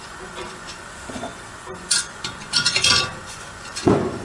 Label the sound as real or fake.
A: fake